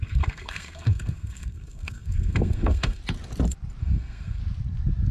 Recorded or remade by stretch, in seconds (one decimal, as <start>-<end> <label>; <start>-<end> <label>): 0.0-3.0 remade; 3.0-3.8 recorded; 3.8-4.4 remade; 4.4-5.1 recorded

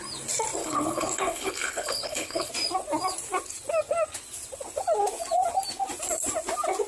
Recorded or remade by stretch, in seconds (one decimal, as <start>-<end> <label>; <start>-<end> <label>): 0.0-0.6 recorded; 0.6-2.5 remade; 2.5-6.9 recorded

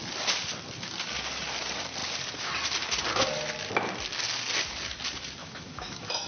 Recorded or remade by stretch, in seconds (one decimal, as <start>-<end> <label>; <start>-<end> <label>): 0.0-5.4 recorded; 5.4-6.3 remade

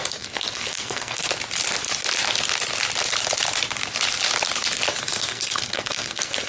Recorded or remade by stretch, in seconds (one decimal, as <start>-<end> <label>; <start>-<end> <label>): 0.0-1.3 remade; 1.3-5.0 recorded; 5.0-6.5 remade

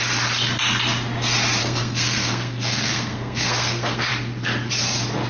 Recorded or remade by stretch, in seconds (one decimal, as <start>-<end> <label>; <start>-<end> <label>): 0.0-1.6 recorded; 1.6-4.1 remade; 4.1-5.3 recorded